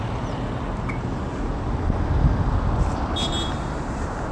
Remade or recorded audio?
recorded